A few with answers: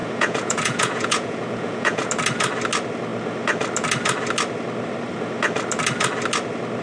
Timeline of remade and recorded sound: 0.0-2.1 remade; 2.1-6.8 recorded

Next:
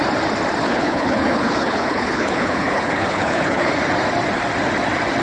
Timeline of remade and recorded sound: 0.0-0.6 recorded; 0.6-3.7 remade; 3.7-5.2 recorded

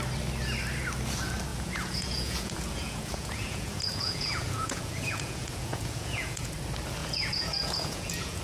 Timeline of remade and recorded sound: 0.0-1.5 recorded; 1.5-6.5 remade; 6.5-7.0 recorded; 7.0-8.4 remade

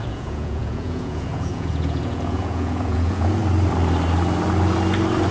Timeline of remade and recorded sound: 0.0-3.4 remade; 3.4-5.3 recorded

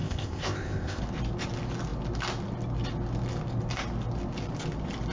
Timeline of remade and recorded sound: 0.0-1.0 remade; 1.0-5.1 recorded

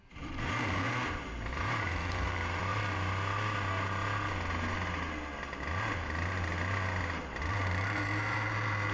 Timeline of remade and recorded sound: 0.0-2.7 remade; 2.7-7.5 recorded; 7.5-8.9 remade

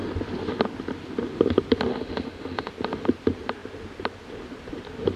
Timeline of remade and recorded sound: 0.0-1.9 recorded; 1.9-2.7 remade; 2.7-5.2 recorded

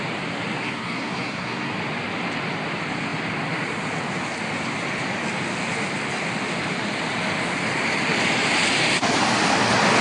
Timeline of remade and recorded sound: 0.0-0.6 recorded; 0.6-1.7 remade; 1.7-10.0 recorded